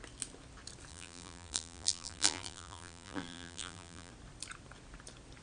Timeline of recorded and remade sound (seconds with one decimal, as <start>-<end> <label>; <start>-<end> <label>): 0.0-0.9 recorded; 0.9-4.1 remade; 4.1-5.4 recorded